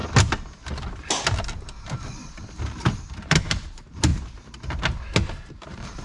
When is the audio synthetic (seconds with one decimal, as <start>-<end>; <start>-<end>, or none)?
2.6-4.1; 5.6-6.0